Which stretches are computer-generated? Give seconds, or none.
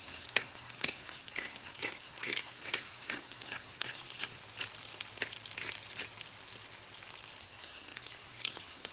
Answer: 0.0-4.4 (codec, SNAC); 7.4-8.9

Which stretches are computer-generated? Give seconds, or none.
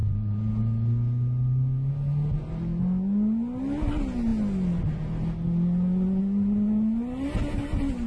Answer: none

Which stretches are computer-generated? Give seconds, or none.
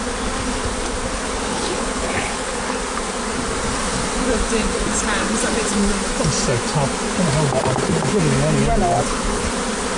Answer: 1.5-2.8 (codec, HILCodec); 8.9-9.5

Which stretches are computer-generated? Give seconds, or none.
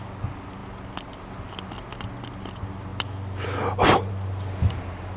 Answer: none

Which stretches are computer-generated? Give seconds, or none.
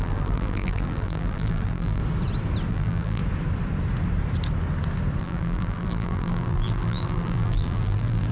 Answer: 0.0-2.0 (vocoder, BigVGAN v2); 2.7-3.2; 5.2-8.3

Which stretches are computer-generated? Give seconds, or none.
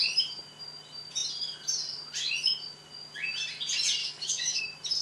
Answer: 4.0-4.6 (codec, DAC)